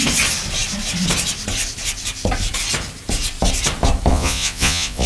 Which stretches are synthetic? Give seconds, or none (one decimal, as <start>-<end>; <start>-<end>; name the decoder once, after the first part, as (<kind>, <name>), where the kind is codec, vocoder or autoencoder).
4.1-5.1 (vocoder, Vocos)